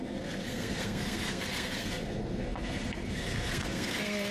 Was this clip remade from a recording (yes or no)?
yes